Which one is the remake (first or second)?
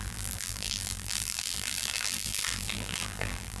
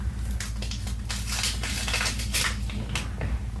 first